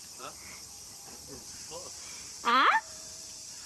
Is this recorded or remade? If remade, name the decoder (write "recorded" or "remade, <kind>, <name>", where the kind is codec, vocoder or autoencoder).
remade, vocoder, BigVGAN v2